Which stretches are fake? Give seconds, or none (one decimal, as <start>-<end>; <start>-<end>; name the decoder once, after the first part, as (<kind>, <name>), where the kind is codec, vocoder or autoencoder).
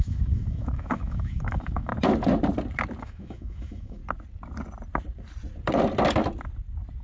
0.0-1.9 (autoencoder, DAC-VAE); 3.0-4.0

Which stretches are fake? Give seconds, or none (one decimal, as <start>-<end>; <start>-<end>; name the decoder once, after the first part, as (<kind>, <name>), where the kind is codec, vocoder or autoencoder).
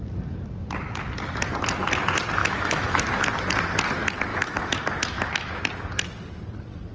2.4-3.0 (autoencoder, DAC-VAE); 4.3-5.6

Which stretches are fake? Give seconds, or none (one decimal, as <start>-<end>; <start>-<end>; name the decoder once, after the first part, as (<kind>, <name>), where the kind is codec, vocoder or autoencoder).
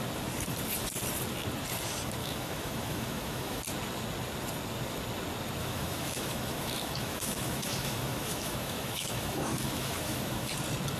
2.2-3.6 (autoencoder, DAC-VAE); 5.6-10.5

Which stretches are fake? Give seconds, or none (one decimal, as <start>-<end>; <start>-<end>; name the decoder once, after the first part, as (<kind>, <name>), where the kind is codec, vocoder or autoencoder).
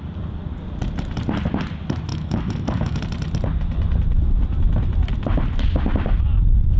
2.1-3.0 (autoencoder, DAC-VAE)